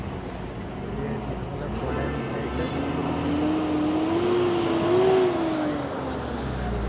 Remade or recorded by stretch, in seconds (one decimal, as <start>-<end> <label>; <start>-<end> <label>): 0.0-6.9 recorded